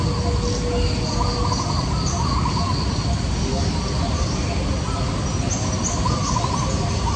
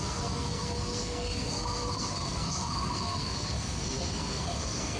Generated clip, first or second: second